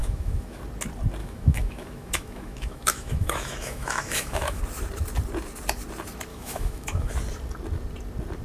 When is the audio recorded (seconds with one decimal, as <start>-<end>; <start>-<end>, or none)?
0.6-1.2; 4.6-6.3; 7.1-8.4